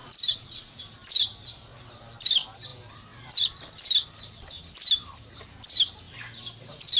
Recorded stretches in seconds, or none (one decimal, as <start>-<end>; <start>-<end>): 0.8-7.0